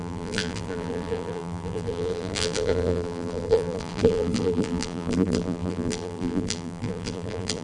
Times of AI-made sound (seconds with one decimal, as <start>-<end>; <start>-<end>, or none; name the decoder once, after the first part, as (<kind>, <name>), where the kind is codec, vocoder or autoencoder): 0.0-7.6 (vocoder, BigVGAN v2)